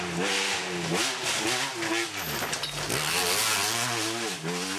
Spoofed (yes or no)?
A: no